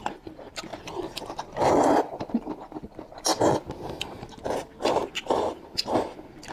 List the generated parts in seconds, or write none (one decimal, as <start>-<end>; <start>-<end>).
none